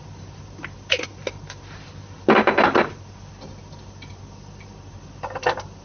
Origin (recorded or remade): recorded